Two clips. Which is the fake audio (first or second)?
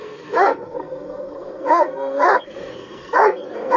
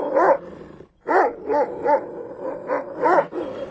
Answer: first